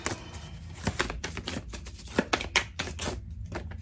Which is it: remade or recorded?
recorded